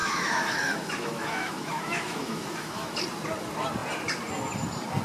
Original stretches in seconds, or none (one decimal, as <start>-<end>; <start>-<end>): 3.0-5.0